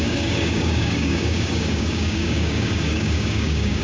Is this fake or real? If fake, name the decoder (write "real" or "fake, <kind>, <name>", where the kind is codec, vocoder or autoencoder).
fake, codec, DAC